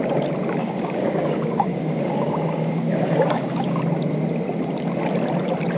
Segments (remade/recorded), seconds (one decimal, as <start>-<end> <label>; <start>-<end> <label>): 0.0-0.6 recorded; 0.6-3.8 remade; 3.8-5.8 recorded